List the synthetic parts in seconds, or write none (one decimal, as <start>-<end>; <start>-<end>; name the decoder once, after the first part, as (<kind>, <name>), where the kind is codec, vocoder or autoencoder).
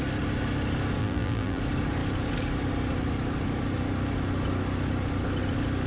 1.0-1.6 (vocoder, BigVGAN v2)